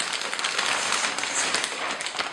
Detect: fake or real real